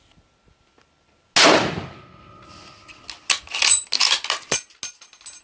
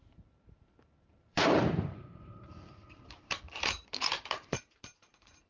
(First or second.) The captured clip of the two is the first